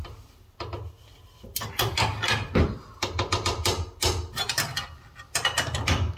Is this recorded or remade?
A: recorded